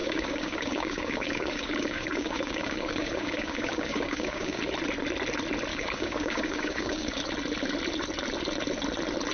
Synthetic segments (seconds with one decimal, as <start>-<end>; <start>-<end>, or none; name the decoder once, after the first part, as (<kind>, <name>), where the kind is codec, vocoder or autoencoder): 0.0-4.6 (codec, DAC); 5.7-7.2